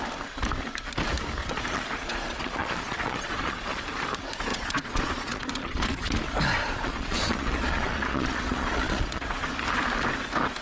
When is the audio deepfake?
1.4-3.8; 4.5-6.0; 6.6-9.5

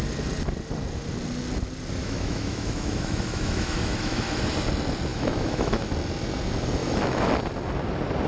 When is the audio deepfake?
2.0-4.4; 5.1-5.8; 6.8-7.3

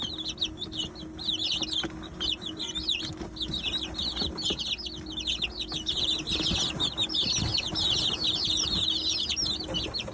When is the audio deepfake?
none